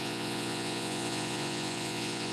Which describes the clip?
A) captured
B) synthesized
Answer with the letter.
B